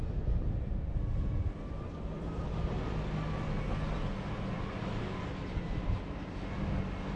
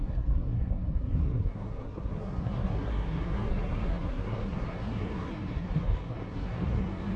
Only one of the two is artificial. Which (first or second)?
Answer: second